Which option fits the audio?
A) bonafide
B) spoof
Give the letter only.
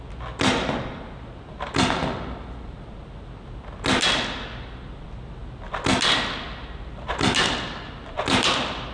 A